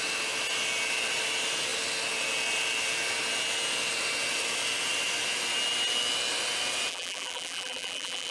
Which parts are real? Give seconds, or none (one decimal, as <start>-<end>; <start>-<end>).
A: 0.0-6.9